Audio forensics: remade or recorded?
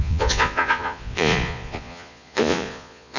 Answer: remade